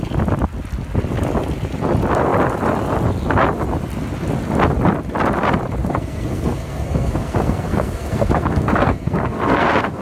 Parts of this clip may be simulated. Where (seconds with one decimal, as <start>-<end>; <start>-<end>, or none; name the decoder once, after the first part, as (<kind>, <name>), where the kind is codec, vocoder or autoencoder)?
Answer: 5.8-10.0 (codec, SNAC)